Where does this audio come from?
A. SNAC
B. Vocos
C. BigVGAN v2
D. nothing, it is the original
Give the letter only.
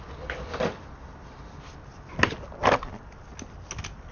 D